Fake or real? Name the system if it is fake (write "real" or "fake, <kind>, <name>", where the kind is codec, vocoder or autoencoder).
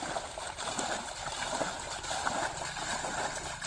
real